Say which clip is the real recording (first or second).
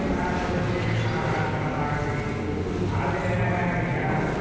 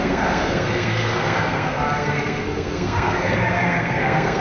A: first